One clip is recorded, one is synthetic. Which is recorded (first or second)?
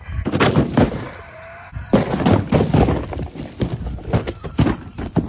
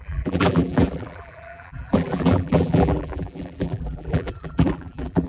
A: first